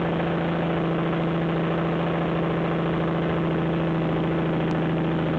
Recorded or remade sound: recorded